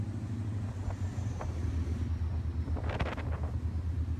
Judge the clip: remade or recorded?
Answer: recorded